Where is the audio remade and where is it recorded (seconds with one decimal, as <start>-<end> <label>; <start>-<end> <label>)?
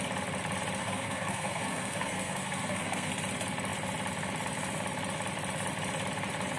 0.0-0.8 recorded; 0.8-3.1 remade; 3.1-6.6 recorded